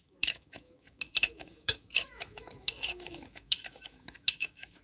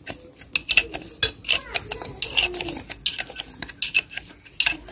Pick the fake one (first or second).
first